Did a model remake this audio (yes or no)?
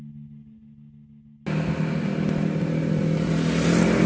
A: no